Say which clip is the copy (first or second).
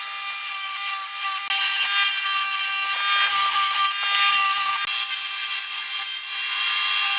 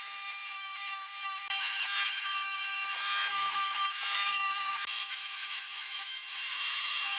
second